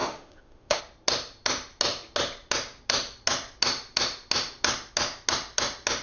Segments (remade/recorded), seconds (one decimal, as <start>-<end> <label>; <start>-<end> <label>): 0.0-0.8 remade; 0.8-6.0 recorded